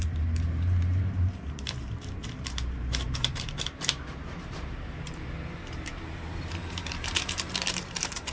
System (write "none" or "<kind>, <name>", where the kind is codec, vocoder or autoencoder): vocoder, BigVGAN v2